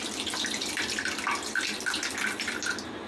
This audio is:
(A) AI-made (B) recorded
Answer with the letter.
B